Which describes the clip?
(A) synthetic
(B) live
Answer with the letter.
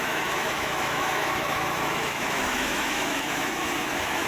A